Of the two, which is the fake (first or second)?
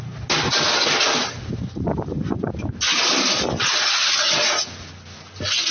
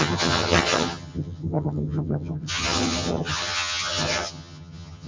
second